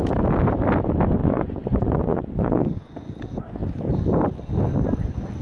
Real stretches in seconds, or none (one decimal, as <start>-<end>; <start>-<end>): 0.0-1.2; 2.9-5.4